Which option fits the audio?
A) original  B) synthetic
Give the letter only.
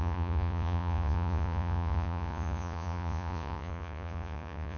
B